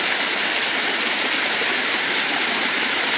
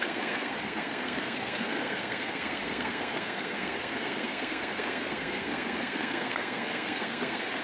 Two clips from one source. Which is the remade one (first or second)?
second